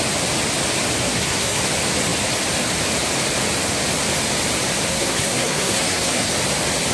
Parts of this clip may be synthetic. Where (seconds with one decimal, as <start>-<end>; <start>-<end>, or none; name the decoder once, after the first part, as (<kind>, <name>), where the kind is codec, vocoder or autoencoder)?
1.0-1.6 (codec, SNAC); 4.9-6.3